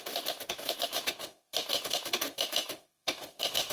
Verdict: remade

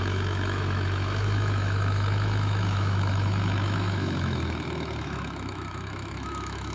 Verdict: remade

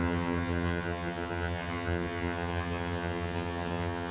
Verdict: remade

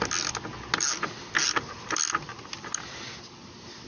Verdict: recorded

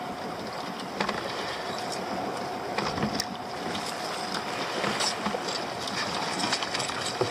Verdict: recorded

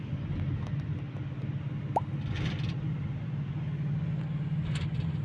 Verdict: recorded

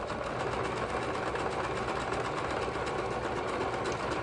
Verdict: recorded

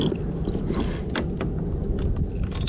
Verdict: recorded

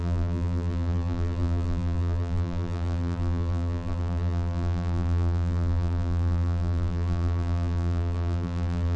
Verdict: remade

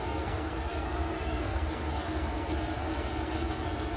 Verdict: remade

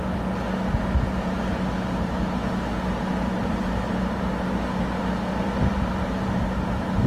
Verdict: recorded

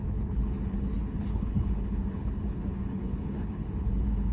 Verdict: remade